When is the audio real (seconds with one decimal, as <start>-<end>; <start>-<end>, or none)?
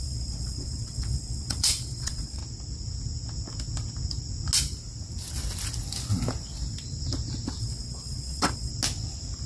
2.4-7.6; 8.7-9.5